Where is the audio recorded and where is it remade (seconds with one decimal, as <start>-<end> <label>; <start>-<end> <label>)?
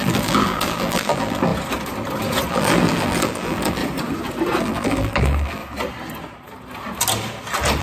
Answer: 0.0-1.5 remade; 1.5-2.5 recorded; 2.5-3.8 remade; 3.8-4.6 recorded; 4.6-5.6 remade; 5.6-7.8 recorded